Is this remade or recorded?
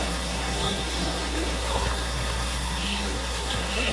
remade